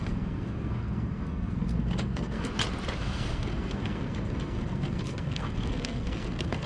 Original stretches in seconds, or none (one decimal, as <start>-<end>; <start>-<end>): 2.5-3.0